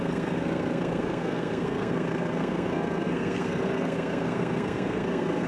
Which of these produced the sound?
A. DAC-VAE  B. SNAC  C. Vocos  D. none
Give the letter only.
B